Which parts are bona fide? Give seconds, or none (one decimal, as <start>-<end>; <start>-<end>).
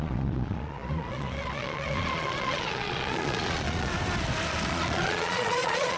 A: 3.9-4.7